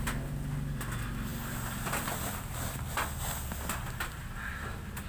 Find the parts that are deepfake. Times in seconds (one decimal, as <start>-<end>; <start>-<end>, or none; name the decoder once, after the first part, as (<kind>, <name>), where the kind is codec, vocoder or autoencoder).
none